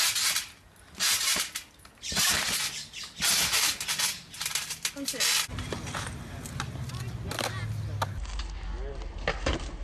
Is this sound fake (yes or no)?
no